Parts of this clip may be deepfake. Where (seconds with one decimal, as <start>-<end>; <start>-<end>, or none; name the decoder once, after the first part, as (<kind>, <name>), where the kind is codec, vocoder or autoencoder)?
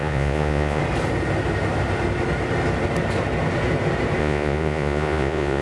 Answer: 0.0-0.8 (vocoder, Vocos); 4.2-5.6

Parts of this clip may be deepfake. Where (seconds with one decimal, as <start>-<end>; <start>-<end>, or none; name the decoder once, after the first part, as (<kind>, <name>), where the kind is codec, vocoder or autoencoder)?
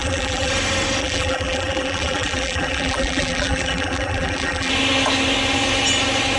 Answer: 0.0-0.5 (vocoder, BigVGAN v2); 1.0-4.7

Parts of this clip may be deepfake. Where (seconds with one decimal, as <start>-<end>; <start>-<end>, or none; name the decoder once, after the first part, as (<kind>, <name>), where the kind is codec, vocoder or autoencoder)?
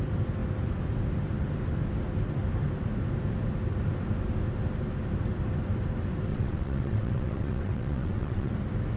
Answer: 6.3-8.5 (vocoder, WaveNeXt)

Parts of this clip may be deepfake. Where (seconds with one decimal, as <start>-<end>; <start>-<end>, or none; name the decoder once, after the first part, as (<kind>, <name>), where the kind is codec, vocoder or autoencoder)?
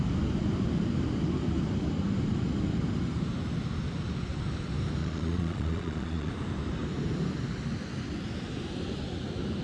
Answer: 5.0-6.3 (vocoder, Vocos)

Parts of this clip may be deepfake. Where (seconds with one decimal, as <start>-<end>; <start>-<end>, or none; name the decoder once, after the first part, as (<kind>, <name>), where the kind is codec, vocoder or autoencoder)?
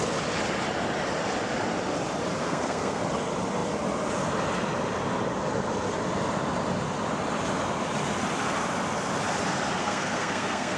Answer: 2.4-3.0 (codec, SNAC); 9.8-10.8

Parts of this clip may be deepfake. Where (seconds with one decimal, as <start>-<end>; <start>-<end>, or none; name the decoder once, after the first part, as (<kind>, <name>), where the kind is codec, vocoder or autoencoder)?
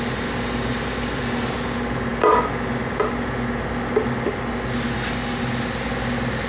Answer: 0.7-1.2 (vocoder, BigVGAN v2)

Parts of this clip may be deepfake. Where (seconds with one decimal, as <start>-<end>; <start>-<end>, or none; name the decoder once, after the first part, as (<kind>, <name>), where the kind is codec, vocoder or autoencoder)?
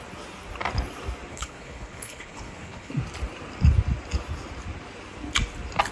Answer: 1.3-2.9 (codec, HILCodec)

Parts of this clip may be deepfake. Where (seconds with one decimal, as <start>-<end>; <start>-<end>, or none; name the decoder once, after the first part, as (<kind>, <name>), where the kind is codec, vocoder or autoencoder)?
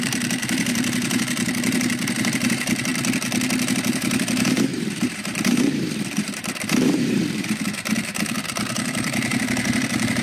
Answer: 0.0-2.9 (vocoder, BigVGAN v2); 3.7-10.2